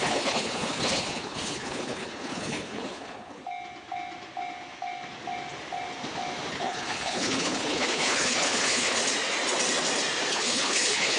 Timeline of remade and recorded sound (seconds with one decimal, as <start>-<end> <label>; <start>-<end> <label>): 0.0-3.4 remade; 3.4-6.5 recorded; 6.5-9.0 remade; 9.0-10.3 recorded; 10.3-11.2 remade